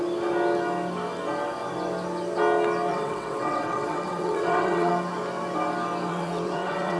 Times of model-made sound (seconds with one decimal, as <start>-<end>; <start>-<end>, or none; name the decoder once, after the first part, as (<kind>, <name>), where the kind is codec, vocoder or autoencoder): 2.9-4.9 (vocoder, WaveNeXt); 6.1-7.0